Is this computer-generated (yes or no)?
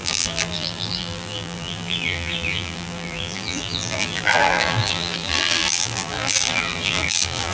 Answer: yes